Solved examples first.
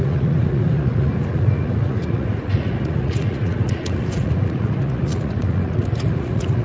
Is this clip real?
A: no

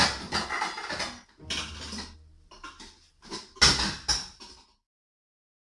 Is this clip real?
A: yes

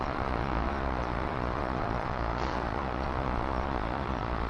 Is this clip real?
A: no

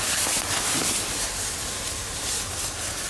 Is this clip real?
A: yes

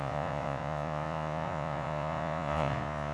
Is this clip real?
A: no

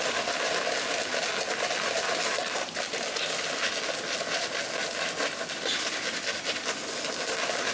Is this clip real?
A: yes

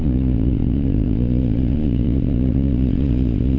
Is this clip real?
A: no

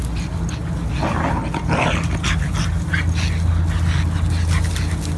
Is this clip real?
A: yes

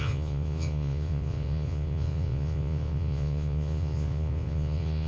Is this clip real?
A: no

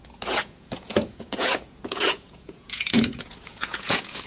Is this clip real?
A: no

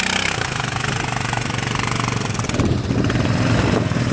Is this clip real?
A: yes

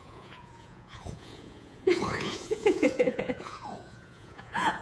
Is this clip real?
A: no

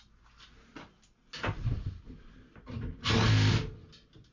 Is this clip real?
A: yes